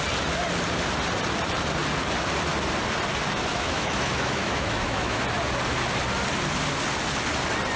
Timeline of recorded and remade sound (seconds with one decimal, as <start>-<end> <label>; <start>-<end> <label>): 0.0-3.5 recorded; 3.5-5.2 remade; 5.2-7.8 recorded